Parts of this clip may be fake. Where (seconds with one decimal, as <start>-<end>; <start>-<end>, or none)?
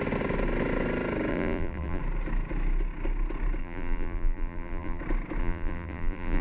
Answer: 1.3-2.0; 3.6-5.0; 5.4-6.4